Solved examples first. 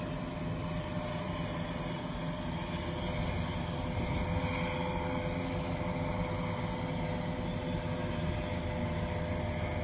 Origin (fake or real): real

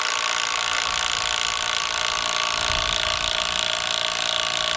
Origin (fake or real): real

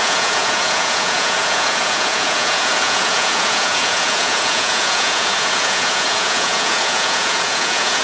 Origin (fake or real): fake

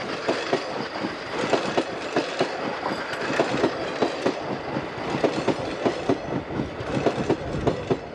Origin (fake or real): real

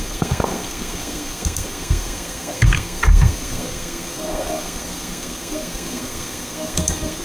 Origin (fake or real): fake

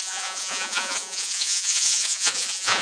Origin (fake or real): fake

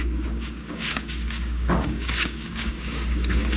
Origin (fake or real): fake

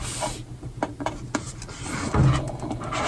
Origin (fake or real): real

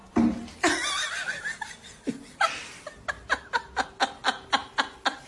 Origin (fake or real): real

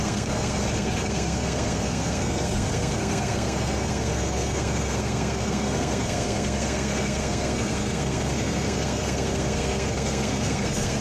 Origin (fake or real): fake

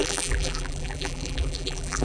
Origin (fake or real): fake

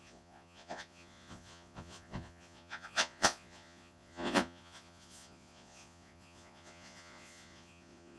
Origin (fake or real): fake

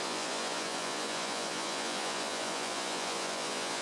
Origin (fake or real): fake